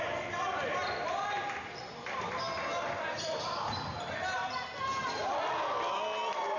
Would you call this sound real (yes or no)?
yes